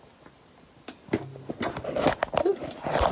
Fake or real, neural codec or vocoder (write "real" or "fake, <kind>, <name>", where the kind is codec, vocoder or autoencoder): real